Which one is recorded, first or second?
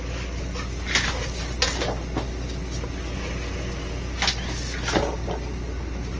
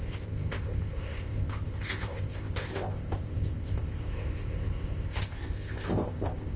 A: first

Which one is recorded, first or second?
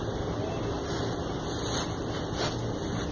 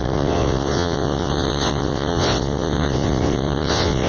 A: first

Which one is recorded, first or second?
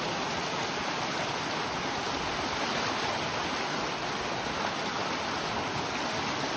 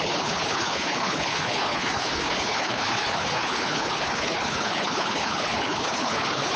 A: first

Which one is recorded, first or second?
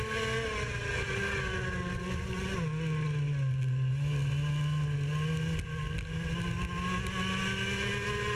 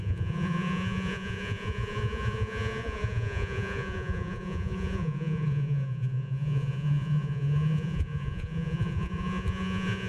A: first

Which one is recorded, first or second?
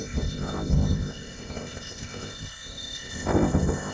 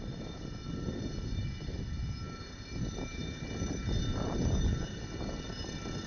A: second